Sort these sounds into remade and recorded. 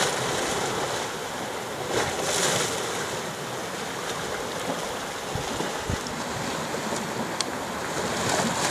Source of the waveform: recorded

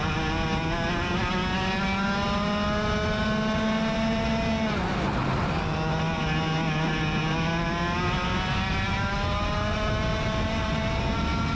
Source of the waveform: recorded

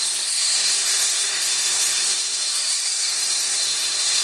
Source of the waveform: remade